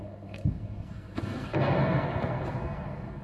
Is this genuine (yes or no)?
no